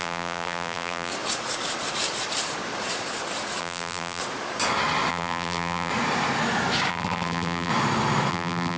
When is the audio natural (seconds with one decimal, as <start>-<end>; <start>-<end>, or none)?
1.1-3.6; 4.2-5.1; 5.9-6.9; 7.7-8.3